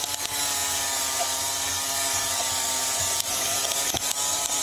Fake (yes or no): yes